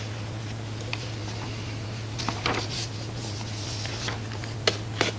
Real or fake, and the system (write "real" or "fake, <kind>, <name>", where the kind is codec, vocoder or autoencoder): real